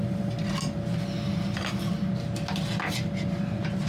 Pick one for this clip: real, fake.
real